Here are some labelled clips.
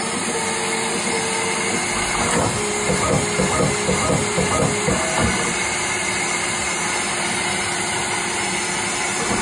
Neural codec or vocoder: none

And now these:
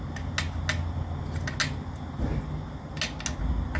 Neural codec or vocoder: none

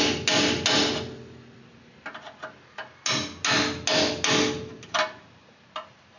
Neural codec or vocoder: none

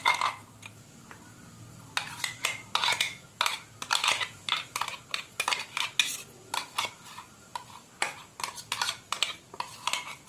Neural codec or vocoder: none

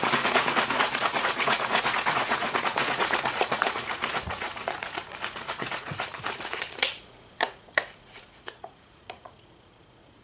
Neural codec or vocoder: vocoder, Vocos